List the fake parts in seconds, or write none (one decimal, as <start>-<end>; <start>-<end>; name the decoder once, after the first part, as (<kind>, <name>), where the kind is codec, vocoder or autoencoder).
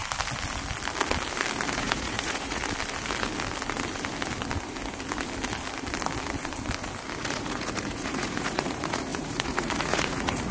1.7-2.6 (vocoder, Vocos); 7.2-10.5